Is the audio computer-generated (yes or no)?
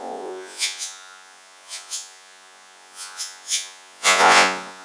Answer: yes